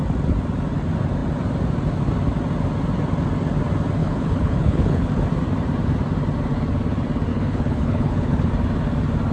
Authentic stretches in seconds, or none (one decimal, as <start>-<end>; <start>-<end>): 0.0-4.0; 5.1-7.3; 8.5-9.3